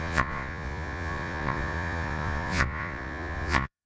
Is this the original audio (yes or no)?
no